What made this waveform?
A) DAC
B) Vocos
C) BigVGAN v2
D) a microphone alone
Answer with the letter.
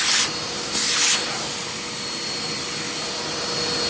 D